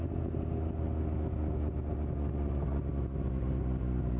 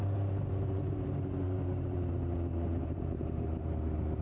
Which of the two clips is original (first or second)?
first